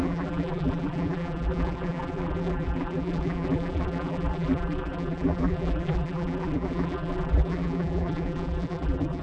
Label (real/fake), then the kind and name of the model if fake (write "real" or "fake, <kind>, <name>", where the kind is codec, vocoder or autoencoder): fake, vocoder, BigVGAN v2